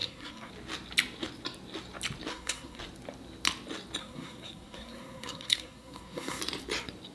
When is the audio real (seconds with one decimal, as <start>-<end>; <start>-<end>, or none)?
0.5-2.3; 2.8-4.0; 6.4-7.1